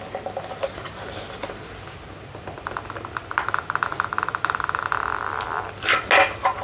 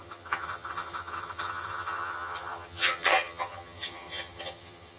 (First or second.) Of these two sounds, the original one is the first